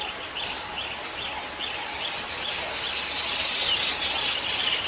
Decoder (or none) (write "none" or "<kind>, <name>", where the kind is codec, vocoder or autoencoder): none